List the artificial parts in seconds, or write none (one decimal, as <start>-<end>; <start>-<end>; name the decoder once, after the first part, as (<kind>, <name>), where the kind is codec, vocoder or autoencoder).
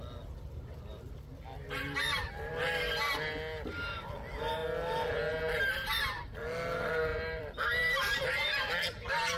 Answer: 7.1-8.2 (vocoder, BigVGAN v2)